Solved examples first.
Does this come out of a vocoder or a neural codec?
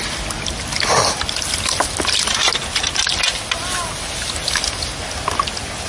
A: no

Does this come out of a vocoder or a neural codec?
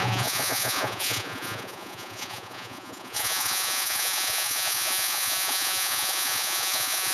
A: yes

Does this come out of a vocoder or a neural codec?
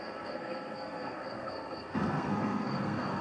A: yes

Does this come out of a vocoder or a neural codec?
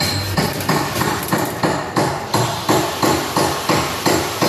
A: no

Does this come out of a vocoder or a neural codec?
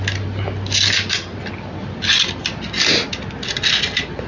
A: no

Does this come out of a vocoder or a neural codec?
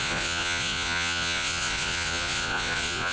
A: yes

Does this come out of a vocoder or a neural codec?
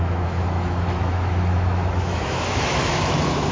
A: yes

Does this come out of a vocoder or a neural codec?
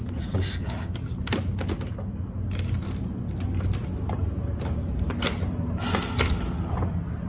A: no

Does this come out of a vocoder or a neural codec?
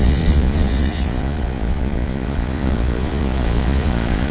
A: yes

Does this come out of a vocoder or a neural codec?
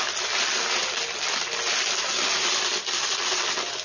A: no